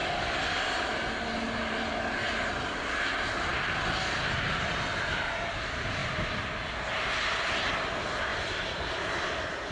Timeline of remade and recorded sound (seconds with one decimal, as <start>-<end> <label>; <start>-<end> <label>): 0.0-6.0 recorded; 6.0-6.7 remade; 6.7-8.3 recorded; 8.3-9.2 remade; 9.2-9.7 recorded